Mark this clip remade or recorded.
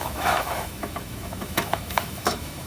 remade